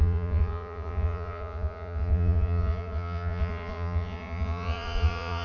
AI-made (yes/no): yes